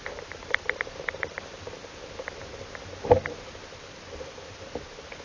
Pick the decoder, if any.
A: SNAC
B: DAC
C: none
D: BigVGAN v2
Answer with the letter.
D